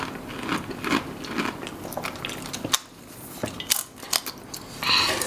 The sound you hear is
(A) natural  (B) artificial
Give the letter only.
A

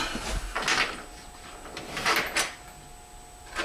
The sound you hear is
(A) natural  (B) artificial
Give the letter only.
A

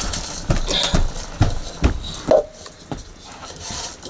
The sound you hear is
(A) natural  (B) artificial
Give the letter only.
A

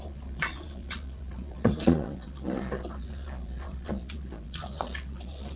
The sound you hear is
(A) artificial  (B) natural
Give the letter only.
A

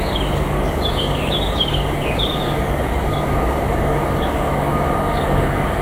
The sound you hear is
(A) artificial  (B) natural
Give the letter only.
A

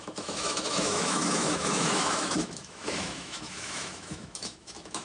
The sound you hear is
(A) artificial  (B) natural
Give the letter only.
A